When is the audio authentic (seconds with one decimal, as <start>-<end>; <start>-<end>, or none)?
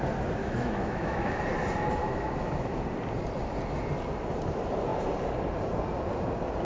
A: 0.0-0.4; 1.4-2.0; 2.8-6.6